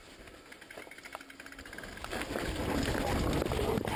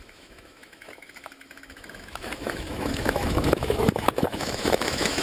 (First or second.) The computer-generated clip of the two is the second